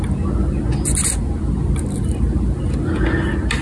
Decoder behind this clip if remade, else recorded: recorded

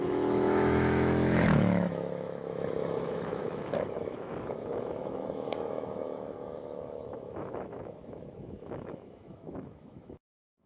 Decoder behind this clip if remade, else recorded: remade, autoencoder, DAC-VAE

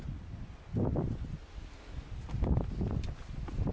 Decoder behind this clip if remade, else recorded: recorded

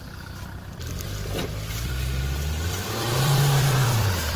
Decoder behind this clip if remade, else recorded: remade, vocoder, BigVGAN v2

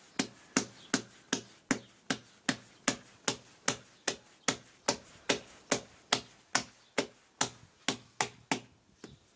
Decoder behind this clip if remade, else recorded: recorded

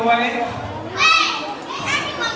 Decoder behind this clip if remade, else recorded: recorded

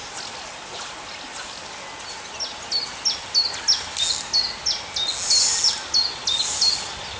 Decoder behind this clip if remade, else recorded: recorded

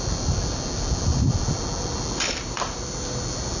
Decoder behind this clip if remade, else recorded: remade, vocoder, BigVGAN v2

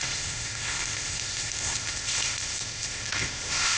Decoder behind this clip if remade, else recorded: remade, codec, ZipCodec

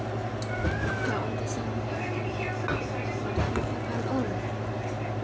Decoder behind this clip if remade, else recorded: recorded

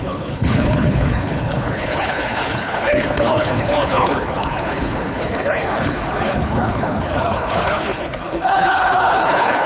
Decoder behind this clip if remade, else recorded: remade, codec, HILCodec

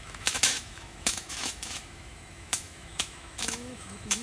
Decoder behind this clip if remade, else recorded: remade, autoencoder, DAC-VAE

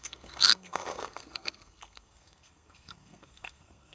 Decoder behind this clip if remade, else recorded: remade, codec, SNAC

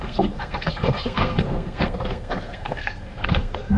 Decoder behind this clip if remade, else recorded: remade, codec, SNAC